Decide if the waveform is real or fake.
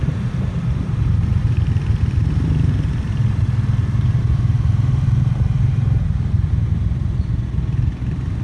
fake